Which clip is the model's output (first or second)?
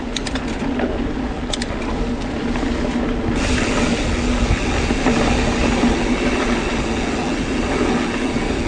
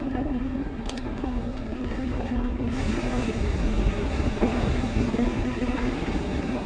second